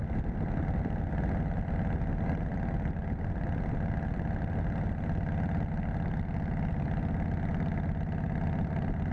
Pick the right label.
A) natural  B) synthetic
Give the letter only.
A